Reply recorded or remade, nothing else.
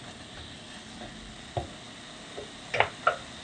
recorded